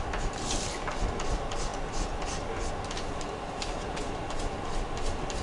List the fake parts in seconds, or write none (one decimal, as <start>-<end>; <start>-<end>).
none